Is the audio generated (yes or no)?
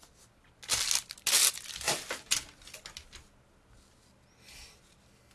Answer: no